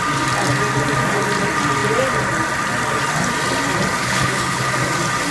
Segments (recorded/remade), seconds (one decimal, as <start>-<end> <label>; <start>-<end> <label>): 0.0-4.0 recorded; 4.0-4.7 remade; 4.7-5.3 recorded